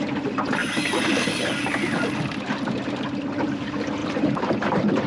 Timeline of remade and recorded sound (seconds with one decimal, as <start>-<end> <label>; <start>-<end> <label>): 0.0-4.0 recorded; 4.0-5.1 remade